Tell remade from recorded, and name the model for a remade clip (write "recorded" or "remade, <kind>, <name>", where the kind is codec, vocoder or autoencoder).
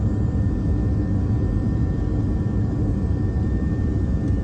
remade, vocoder, BigVGAN v2